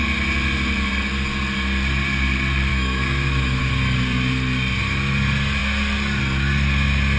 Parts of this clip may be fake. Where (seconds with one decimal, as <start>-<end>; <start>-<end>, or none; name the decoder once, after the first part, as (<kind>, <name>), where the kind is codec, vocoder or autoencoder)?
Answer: 2.7-3.6 (autoencoder, DAC-VAE)